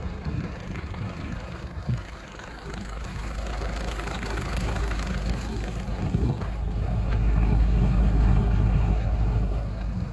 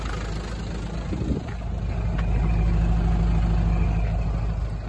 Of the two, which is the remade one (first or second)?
first